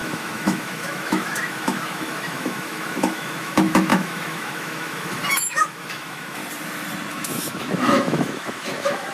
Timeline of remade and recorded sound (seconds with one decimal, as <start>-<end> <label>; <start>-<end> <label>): 0.0-6.4 remade; 6.4-7.1 recorded; 7.1-9.1 remade